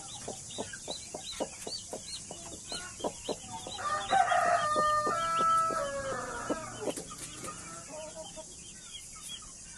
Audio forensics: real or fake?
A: real